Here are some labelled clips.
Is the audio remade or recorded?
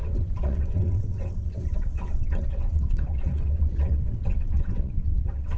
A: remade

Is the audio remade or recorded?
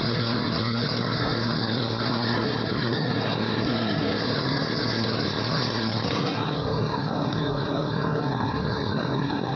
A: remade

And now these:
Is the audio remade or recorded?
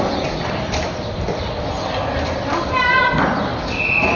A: recorded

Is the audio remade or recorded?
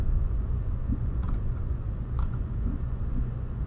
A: remade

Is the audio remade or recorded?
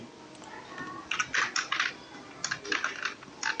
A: recorded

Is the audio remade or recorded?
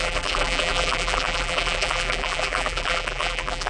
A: remade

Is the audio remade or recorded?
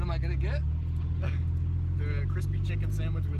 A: recorded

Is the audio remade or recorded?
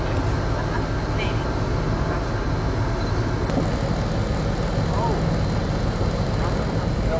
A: recorded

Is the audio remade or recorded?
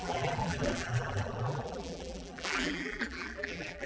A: remade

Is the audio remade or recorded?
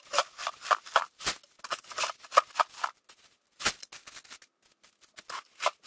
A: recorded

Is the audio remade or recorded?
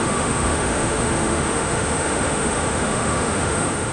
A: remade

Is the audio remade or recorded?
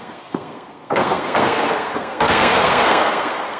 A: remade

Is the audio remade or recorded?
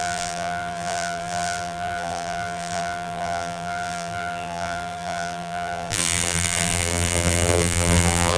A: remade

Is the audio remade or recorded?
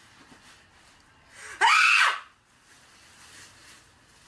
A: recorded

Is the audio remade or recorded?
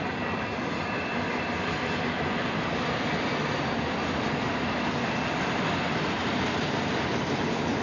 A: recorded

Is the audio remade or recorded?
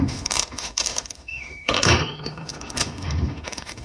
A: remade